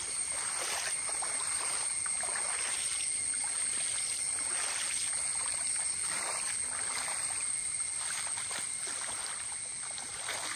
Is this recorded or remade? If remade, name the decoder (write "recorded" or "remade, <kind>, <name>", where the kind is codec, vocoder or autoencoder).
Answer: recorded